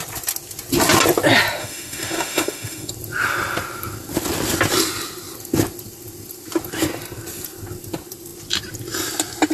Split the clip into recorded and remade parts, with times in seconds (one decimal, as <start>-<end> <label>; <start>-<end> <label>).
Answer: 0.0-1.6 recorded; 1.6-2.9 remade; 2.9-9.5 recorded